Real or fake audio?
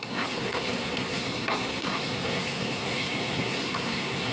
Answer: fake